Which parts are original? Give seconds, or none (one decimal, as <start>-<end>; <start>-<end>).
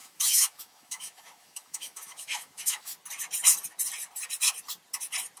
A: 2.9-5.4